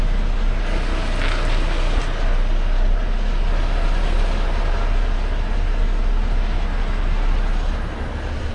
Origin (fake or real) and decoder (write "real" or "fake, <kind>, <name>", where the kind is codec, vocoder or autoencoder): real